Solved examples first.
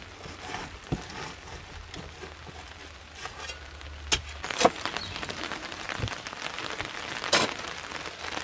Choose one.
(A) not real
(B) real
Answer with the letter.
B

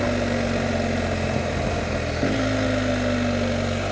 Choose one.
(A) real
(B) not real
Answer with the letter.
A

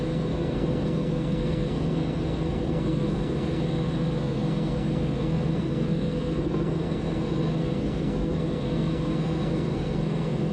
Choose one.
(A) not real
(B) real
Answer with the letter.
A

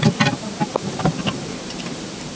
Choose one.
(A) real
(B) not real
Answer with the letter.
B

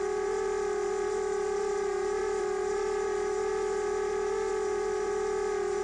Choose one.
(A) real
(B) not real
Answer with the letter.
B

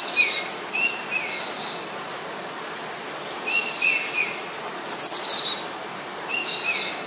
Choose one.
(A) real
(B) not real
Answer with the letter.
A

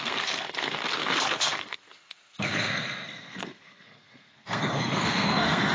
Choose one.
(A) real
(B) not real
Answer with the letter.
B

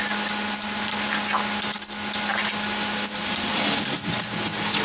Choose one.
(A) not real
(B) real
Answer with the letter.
B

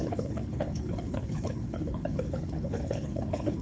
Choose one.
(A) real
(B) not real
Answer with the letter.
B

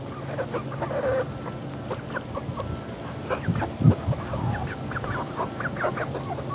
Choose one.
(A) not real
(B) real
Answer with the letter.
B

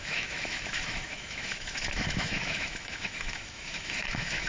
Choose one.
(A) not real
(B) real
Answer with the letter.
A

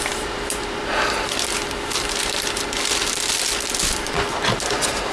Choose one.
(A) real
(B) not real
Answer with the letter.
B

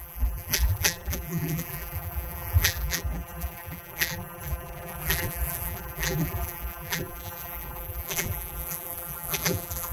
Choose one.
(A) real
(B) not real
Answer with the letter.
B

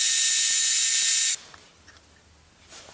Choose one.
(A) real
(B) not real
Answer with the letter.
A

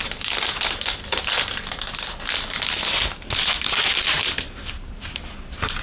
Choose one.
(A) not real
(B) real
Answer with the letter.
B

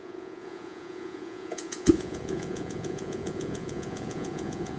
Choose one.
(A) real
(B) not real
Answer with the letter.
B